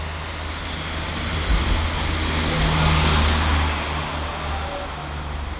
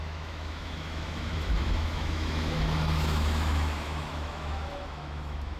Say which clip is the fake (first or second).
second